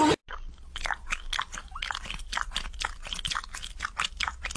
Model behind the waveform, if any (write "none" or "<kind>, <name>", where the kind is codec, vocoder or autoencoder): none